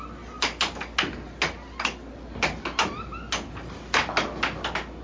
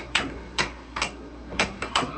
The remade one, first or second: second